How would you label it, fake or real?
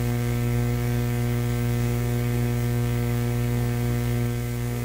fake